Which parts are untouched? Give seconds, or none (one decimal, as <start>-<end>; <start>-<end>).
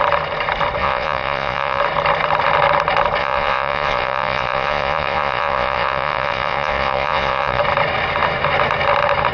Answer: 0.0-0.8; 1.8-3.2; 7.6-9.3